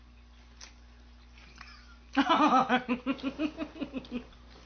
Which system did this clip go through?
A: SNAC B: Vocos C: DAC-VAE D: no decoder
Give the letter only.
D